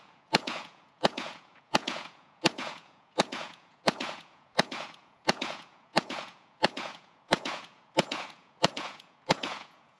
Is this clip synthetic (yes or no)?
yes